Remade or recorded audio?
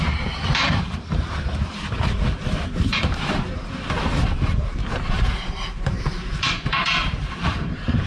remade